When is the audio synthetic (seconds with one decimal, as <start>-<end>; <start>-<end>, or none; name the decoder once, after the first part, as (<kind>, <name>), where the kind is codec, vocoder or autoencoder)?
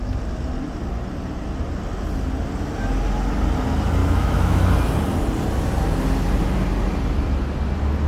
4.0-4.7 (autoencoder, DAC-VAE)